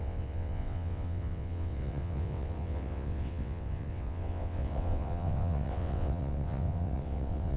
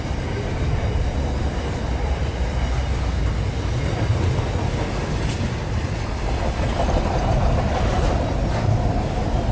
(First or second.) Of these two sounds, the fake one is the first